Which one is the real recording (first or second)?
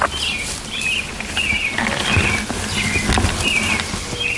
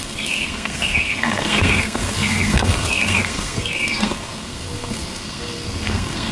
first